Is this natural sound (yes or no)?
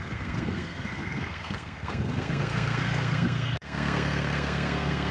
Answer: no